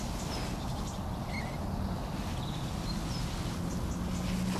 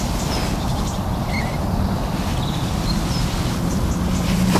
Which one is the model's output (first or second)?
second